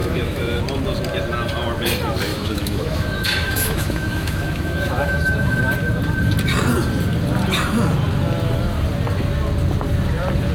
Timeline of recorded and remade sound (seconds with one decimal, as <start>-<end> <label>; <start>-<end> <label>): 0.0-0.6 remade; 0.6-2.3 recorded; 2.3-5.6 remade; 5.6-10.5 recorded